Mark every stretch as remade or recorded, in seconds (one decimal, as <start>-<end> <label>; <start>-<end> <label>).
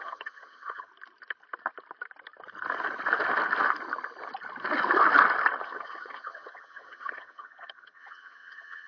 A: 0.0-0.9 remade; 0.9-5.6 recorded; 5.6-8.9 remade